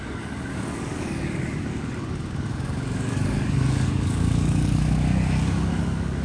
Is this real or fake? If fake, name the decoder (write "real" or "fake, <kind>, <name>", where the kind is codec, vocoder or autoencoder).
fake, codec, DAC